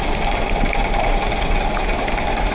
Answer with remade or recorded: recorded